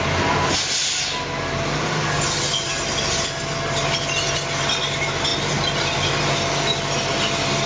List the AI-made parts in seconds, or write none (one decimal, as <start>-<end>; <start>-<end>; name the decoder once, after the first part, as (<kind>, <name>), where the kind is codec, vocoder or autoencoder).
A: none